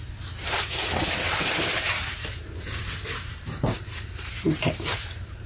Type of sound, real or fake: fake